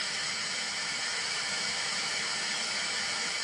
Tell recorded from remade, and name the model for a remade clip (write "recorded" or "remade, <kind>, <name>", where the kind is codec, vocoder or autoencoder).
remade, autoencoder, DAC-VAE